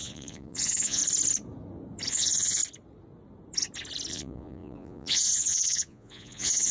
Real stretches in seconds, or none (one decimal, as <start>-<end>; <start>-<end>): 1.0-2.1; 2.6-4.1